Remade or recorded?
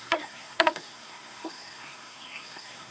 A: remade